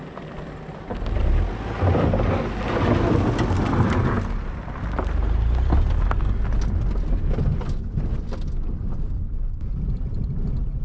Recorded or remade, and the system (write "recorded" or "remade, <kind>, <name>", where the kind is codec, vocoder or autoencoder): recorded